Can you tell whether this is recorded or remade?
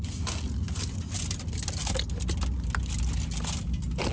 recorded